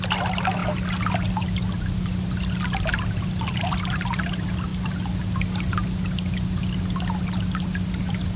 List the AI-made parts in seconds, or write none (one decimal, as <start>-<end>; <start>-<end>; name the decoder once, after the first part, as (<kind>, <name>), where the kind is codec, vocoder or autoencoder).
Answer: none